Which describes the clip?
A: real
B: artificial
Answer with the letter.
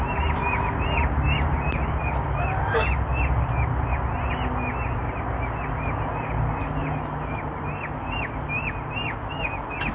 A